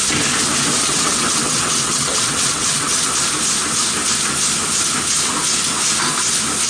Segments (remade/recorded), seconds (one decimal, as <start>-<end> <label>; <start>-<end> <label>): 0.0-0.8 recorded; 0.8-3.1 remade; 3.1-6.7 recorded

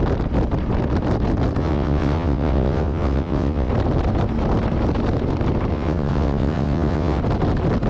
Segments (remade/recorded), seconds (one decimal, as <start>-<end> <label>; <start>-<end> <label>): 0.0-1.6 recorded; 1.6-3.7 remade; 3.7-5.7 recorded; 5.7-7.2 remade; 7.2-7.9 recorded

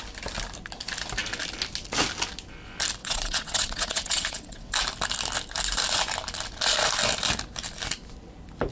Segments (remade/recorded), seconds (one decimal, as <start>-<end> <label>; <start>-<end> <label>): 0.0-3.0 recorded; 3.0-4.7 remade; 4.7-8.7 recorded

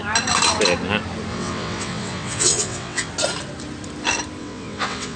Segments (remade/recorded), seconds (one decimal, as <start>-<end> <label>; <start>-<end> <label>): 0.0-1.3 recorded; 1.3-3.1 remade; 3.1-4.4 recorded; 4.4-5.2 remade

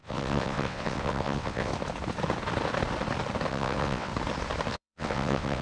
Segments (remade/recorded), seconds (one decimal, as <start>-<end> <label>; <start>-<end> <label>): 0.0-1.7 remade; 1.7-3.5 recorded; 3.5-4.1 remade; 4.1-4.7 recorded; 4.7-5.6 remade

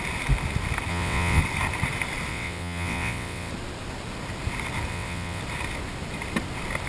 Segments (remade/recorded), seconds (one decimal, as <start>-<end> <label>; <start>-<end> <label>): 0.0-0.9 recorded; 0.9-1.4 remade; 1.4-2.3 recorded; 2.3-3.5 remade; 3.5-4.9 recorded; 4.9-5.4 remade; 5.4-6.9 recorded

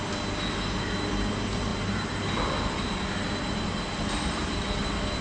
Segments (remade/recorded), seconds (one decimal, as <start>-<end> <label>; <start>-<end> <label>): 0.0-5.2 recorded